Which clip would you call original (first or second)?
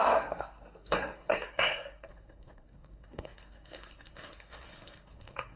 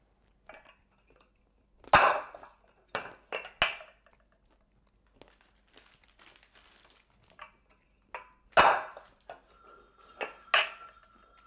second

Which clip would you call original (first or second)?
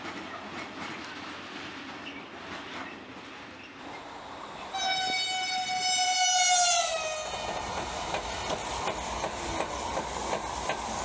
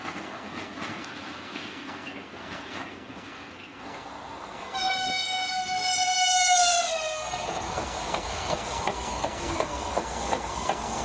first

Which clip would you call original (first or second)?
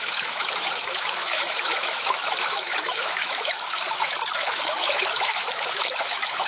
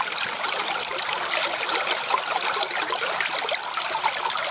second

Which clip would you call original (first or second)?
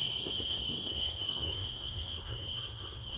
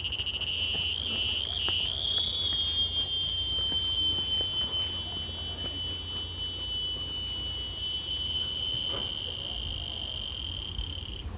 second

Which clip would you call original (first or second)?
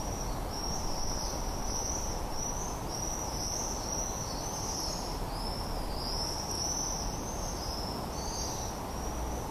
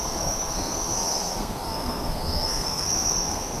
first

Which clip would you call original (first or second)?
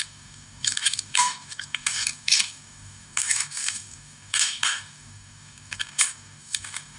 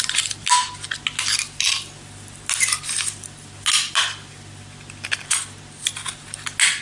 second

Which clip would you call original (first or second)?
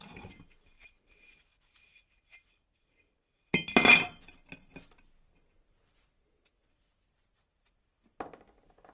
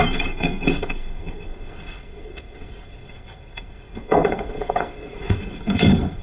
first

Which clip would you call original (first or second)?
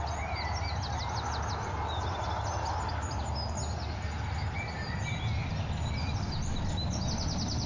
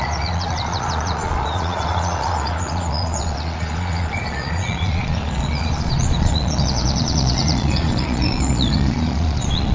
first